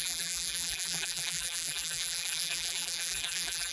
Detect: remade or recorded remade